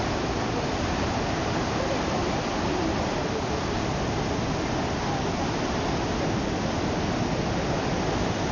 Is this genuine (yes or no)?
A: yes